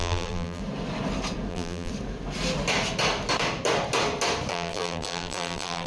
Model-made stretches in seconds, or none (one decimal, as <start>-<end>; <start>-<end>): 0.0-0.6; 1.5-1.9; 4.5-5.9